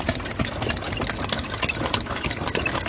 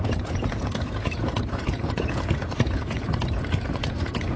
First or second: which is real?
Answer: first